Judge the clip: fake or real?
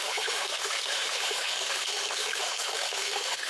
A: fake